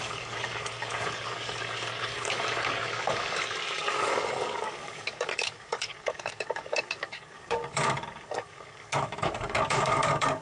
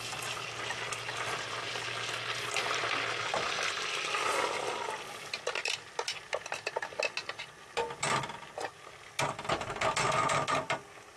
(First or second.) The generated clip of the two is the first